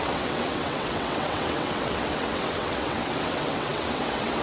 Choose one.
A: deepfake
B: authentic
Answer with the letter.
A